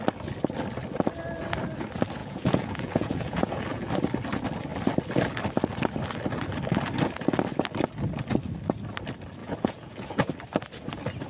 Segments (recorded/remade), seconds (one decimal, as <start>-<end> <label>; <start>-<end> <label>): 0.0-2.2 recorded; 2.2-3.9 remade; 3.9-9.4 recorded; 9.4-10.3 remade; 10.3-11.3 recorded